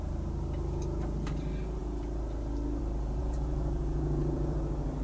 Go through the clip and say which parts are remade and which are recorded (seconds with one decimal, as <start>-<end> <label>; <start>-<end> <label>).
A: 0.0-3.2 recorded; 3.2-4.6 remade; 4.6-5.0 recorded